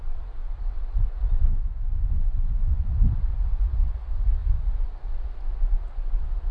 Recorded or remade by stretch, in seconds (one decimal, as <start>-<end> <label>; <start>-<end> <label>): 0.0-1.5 recorded; 1.5-2.9 remade; 2.9-6.5 recorded